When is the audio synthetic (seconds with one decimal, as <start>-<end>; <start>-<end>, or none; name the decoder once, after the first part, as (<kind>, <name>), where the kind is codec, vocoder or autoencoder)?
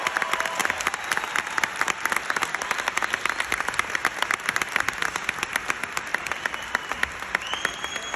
2.6-3.4 (vocoder, BigVGAN v2); 6.1-6.9